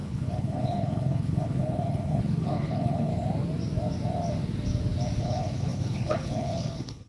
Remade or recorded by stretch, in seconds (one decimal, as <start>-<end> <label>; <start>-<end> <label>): 0.0-3.1 remade; 3.1-5.2 recorded; 5.2-7.1 remade